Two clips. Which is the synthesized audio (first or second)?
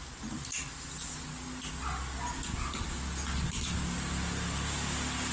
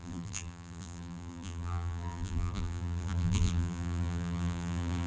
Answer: second